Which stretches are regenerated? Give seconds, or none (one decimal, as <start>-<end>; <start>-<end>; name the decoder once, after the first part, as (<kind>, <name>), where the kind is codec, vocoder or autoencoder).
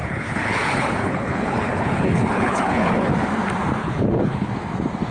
0.0-3.1 (codec, HILCodec); 3.8-4.5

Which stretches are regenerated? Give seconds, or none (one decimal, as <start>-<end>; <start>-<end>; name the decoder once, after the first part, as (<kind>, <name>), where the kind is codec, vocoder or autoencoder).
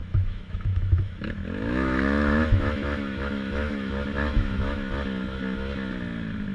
0.0-3.9 (autoencoder, DAC-VAE); 4.3-4.9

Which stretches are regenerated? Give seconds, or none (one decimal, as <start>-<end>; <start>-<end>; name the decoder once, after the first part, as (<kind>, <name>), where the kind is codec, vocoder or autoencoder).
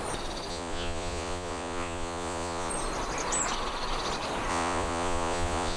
0.5-2.7 (vocoder, Vocos); 4.5-5.8